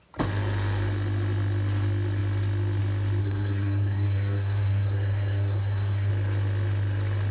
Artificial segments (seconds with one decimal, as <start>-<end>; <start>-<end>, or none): 3.2-6.1

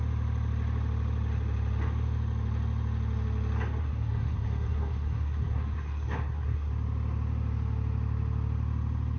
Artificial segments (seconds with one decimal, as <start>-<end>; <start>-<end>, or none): 3.8-6.7

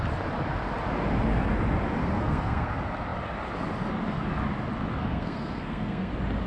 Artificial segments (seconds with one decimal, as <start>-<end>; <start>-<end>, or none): 2.0-2.7; 5.0-6.1

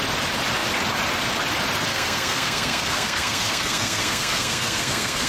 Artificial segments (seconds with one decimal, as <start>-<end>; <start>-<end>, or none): 1.9-5.3

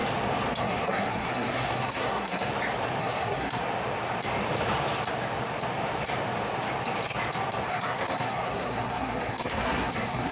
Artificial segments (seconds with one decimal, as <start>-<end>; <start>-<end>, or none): 0.6-2.5; 3.0-3.6; 7.7-10.3

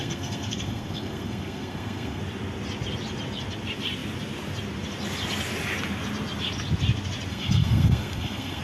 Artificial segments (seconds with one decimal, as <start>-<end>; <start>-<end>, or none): 0.0-2.2; 7.3-8.6

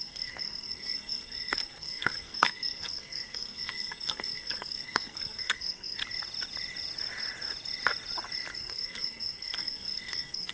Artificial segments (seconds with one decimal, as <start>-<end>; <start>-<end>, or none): 0.0-6.0; 8.6-10.5

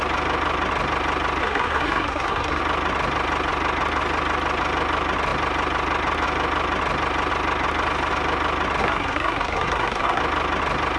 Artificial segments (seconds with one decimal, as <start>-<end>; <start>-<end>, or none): 1.4-2.6; 8.8-10.2